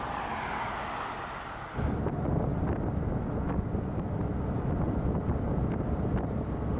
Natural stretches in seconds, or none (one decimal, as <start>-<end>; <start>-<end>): 0.0-6.8

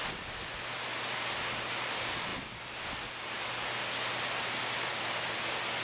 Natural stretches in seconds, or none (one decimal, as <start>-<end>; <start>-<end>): 0.0-5.8

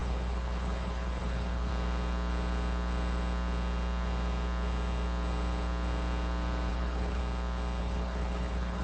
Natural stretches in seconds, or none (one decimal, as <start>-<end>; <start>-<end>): 1.7-6.7; 7.2-7.8

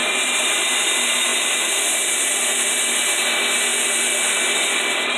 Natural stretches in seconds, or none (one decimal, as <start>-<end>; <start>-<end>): 0.6-1.3; 3.0-5.2